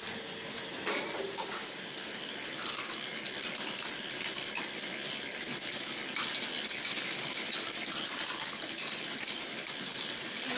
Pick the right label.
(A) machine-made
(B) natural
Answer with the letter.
B